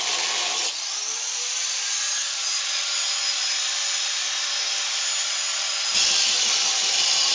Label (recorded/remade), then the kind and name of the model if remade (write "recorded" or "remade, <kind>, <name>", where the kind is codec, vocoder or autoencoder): remade, vocoder, BigVGAN v2